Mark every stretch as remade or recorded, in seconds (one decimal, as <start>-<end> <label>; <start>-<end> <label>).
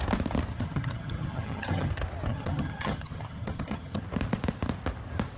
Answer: 0.0-0.5 recorded; 0.5-1.9 remade; 1.9-2.3 recorded; 2.3-4.0 remade; 4.0-5.4 recorded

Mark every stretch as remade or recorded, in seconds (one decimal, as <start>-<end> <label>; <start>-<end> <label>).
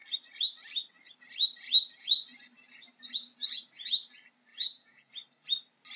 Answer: 0.0-4.5 recorded; 4.5-5.1 remade; 5.1-6.0 recorded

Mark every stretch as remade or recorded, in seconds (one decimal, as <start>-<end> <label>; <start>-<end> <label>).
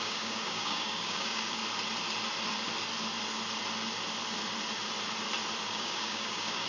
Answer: 0.0-1.6 remade; 1.6-5.6 recorded; 5.6-6.7 remade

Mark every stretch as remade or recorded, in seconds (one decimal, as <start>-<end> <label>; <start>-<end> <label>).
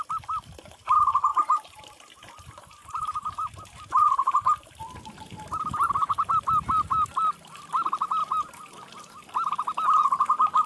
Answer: 0.0-1.3 recorded; 1.3-4.3 remade; 4.3-10.7 recorded